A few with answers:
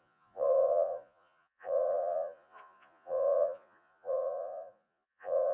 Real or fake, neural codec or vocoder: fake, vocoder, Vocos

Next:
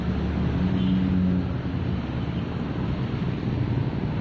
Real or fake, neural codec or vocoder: real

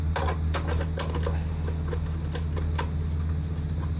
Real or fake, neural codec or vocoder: real